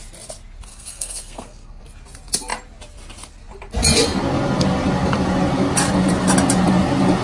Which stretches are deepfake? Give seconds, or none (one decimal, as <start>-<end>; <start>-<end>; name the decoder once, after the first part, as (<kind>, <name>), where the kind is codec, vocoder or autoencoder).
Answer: 0.7-1.8 (codec, SNAC)